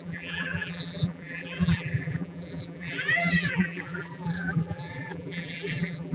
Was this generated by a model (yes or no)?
yes